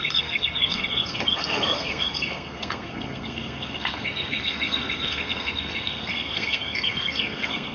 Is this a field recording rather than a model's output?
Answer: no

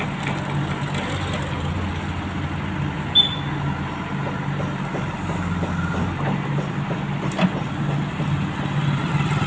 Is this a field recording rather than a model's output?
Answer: yes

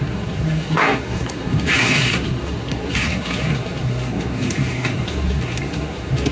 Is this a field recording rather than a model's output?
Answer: no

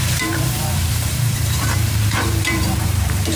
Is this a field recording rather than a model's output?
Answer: no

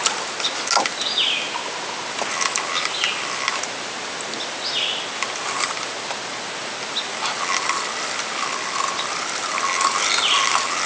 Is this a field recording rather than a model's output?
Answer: yes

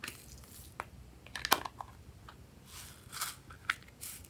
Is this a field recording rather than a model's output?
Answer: yes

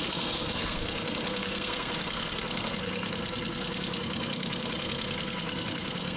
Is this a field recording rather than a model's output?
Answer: no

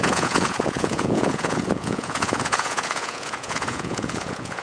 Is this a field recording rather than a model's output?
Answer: no